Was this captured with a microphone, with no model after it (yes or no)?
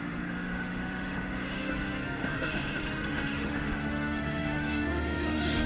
no